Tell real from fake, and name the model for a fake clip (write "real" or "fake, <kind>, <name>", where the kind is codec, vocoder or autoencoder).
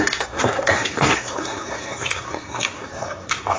fake, codec, SNAC